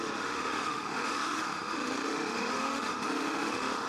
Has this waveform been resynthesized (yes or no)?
yes